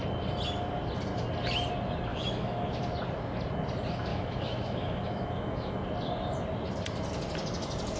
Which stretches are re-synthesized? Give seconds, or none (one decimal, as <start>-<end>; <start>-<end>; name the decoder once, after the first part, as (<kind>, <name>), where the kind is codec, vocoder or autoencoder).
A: 2.1-2.8 (autoencoder, DAC-VAE); 4.1-5.8